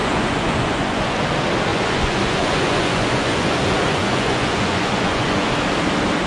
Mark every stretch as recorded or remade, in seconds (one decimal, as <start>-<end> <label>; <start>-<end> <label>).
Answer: 0.0-1.2 remade; 1.2-1.7 recorded; 1.7-5.5 remade; 5.5-6.3 recorded

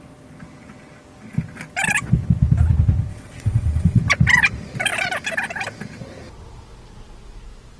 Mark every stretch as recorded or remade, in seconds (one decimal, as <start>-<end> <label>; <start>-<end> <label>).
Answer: 0.0-3.1 recorded; 3.1-4.0 remade; 4.0-7.8 recorded

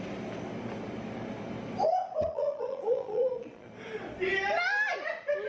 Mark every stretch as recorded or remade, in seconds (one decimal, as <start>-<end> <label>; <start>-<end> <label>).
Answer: 0.0-2.2 recorded; 2.2-3.7 remade; 3.7-5.5 recorded

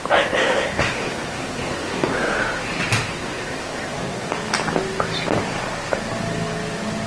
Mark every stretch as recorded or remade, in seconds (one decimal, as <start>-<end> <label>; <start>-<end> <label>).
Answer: 0.0-0.4 recorded; 0.4-2.4 remade; 2.4-3.1 recorded; 3.1-4.3 remade; 4.3-7.1 recorded

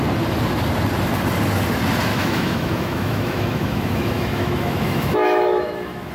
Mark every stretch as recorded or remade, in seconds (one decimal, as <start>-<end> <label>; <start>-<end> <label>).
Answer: 0.0-2.1 recorded; 2.1-6.1 remade

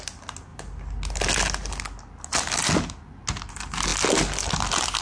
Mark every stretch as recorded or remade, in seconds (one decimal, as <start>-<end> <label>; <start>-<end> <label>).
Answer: 0.0-5.0 recorded

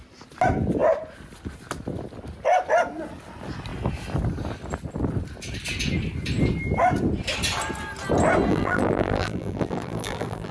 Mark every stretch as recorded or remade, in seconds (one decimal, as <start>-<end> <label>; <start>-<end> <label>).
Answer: 0.0-8.5 recorded; 8.5-10.5 remade